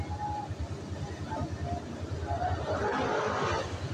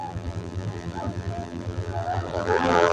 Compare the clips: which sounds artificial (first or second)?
second